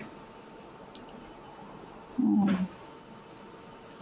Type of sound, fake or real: real